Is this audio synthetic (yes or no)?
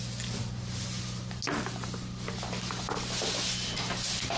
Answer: no